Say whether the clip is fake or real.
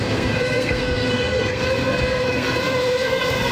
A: fake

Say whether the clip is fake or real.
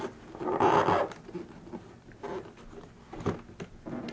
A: real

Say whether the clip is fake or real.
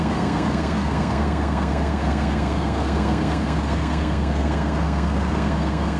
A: fake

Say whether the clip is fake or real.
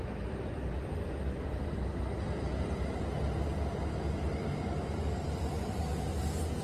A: real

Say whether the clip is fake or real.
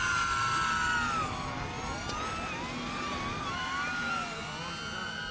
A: real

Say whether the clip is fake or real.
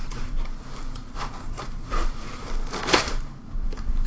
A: fake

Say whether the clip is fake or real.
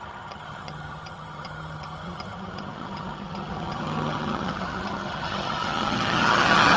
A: fake